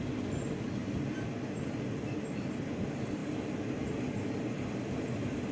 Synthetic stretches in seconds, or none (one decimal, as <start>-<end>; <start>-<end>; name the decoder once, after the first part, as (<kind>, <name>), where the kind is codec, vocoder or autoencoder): none